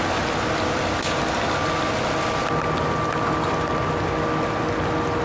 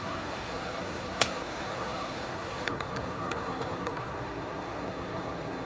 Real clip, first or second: first